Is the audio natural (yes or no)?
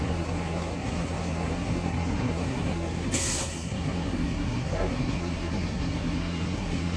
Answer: no